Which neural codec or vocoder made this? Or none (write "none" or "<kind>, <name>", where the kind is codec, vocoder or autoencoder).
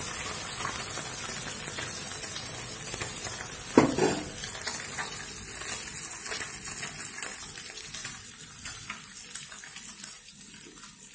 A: none